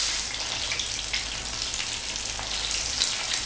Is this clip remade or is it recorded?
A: recorded